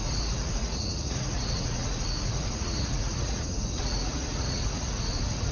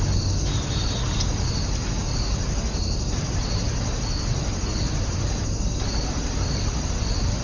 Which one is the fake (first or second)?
first